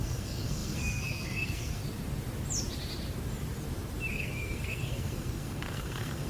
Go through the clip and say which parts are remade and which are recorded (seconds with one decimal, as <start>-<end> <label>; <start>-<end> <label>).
0.0-1.8 remade; 1.8-4.1 recorded; 4.1-6.3 remade